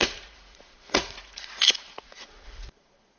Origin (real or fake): fake